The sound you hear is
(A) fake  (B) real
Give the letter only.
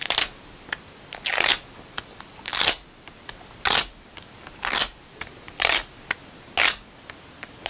B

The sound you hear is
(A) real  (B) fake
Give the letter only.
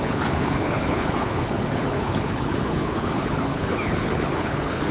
B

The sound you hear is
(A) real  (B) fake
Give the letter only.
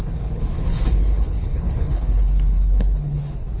B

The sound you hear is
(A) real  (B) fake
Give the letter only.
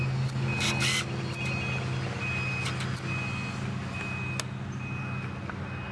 A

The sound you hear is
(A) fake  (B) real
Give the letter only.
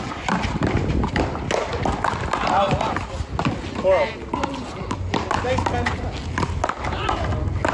B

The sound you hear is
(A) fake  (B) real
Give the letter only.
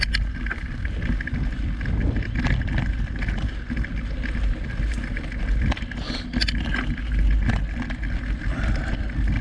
B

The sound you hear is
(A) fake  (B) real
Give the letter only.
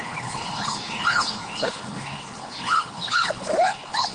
A